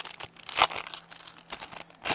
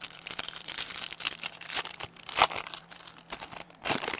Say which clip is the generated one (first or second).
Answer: second